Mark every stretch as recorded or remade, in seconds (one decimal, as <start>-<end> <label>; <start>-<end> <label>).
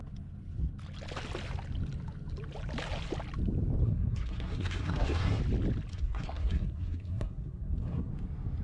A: 0.0-3.8 recorded; 3.8-5.4 remade; 5.4-5.9 recorded; 5.9-8.1 remade; 8.1-8.6 recorded